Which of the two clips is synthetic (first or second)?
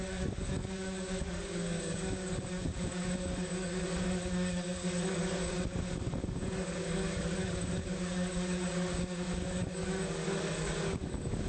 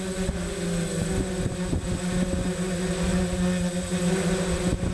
first